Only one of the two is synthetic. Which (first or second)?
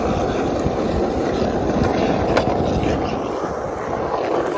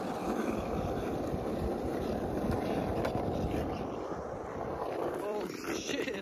second